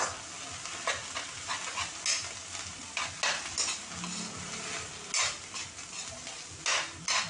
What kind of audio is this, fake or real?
real